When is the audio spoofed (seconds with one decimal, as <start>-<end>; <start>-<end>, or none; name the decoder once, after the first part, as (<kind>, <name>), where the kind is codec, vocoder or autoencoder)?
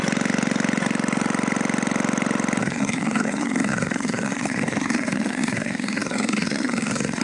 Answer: 2.6-7.2 (codec, SNAC)